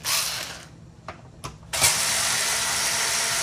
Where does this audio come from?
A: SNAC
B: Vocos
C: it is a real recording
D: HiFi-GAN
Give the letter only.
C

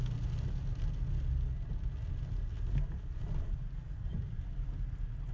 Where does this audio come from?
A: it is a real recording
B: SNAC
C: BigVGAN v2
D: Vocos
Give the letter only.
A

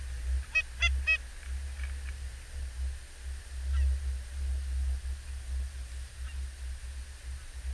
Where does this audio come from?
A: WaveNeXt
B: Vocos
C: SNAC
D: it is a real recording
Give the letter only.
D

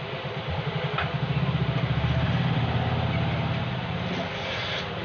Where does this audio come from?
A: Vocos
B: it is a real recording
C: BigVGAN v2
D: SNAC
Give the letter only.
B